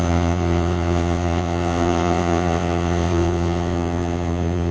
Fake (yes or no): yes